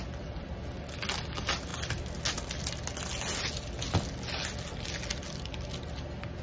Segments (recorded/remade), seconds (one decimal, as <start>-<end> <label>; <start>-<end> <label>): 0.0-6.4 recorded

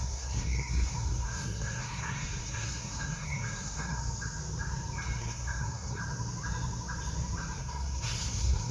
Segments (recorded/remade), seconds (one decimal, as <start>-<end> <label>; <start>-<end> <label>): 0.0-4.0 remade; 4.0-5.2 recorded; 5.2-6.0 remade; 6.0-7.6 recorded; 7.6-8.7 remade